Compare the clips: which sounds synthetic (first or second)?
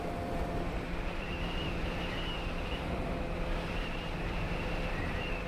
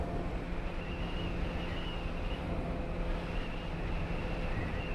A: first